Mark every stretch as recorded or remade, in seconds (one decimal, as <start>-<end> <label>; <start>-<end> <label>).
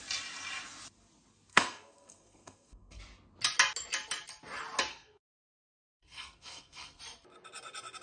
0.0-1.5 recorded; 1.5-3.0 remade; 3.0-4.9 recorded; 4.9-7.0 remade; 7.0-8.0 recorded